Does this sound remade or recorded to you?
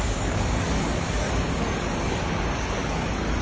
remade